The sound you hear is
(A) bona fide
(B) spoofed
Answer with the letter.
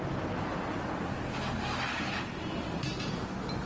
A